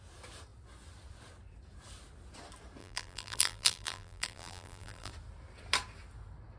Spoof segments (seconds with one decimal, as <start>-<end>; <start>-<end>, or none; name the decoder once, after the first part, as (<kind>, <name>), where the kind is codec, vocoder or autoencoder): 2.8-5.1 (vocoder, BigVGAN v2)